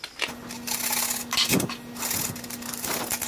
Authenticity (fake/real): real